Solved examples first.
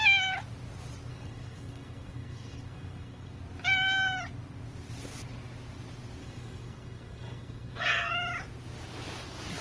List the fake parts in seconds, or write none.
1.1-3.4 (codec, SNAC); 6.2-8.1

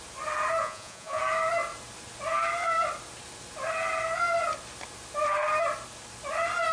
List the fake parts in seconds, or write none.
0.6-1.2 (vocoder, Vocos)

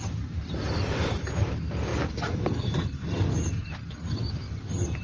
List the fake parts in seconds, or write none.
1.9-5.0 (vocoder, BigVGAN v2)

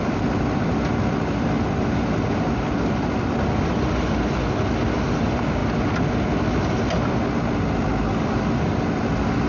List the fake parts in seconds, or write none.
none

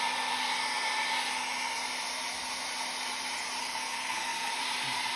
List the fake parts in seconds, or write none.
3.6-4.5 (codec, SNAC)

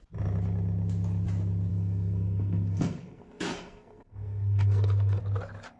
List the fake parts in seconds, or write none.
1.7-5.2 (codec, SNAC)

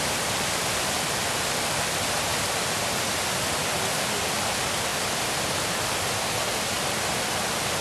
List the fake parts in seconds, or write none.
none

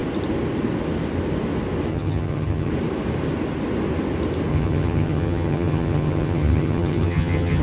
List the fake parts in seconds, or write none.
1.9-2.7 (vocoder, HiFi-GAN); 4.5-7.6